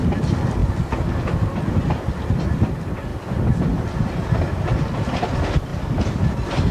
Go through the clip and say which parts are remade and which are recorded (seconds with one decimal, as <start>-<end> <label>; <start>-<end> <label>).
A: 0.0-6.7 recorded